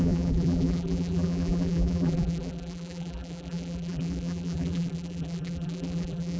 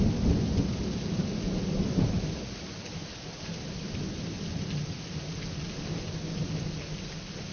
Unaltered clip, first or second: second